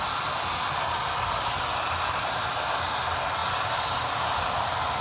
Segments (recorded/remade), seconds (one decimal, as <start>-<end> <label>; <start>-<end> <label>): 0.0-5.0 recorded